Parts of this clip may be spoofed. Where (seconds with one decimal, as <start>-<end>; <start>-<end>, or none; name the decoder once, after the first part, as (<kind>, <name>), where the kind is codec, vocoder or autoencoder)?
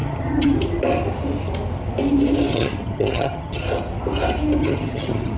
0.0-0.6 (vocoder, HiFi-GAN); 2.5-3.6; 4.6-5.4